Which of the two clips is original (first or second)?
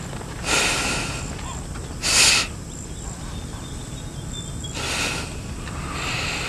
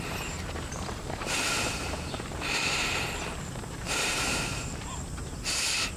first